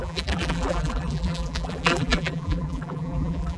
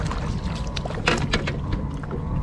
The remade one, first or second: first